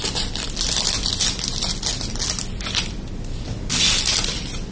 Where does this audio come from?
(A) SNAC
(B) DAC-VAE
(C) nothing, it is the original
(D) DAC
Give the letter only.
C